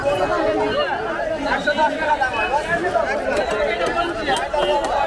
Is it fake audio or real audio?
real